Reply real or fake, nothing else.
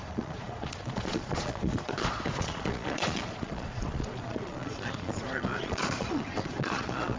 fake